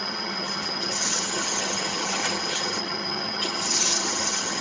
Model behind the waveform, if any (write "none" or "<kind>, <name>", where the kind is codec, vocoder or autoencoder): vocoder, HiFi-GAN